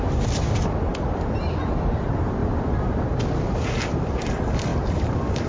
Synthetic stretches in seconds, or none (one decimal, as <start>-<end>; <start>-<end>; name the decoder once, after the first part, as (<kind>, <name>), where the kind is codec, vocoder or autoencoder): 0.0-2.4 (vocoder, BigVGAN v2); 3.4-5.5